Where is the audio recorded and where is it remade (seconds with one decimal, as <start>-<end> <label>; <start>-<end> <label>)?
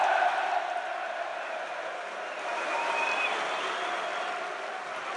0.0-1.3 recorded; 1.3-3.6 remade; 3.6-5.2 recorded